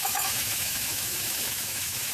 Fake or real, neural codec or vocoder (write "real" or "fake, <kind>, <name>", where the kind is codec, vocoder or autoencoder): fake, autoencoder, DAC-VAE